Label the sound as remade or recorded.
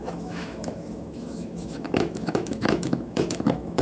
remade